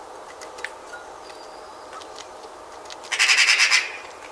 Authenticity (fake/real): real